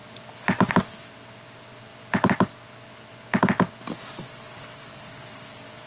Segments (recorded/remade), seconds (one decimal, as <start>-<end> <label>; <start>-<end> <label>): 0.0-5.9 recorded